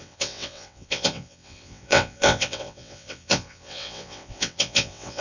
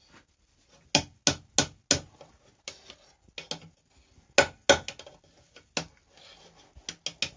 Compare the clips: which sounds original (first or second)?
second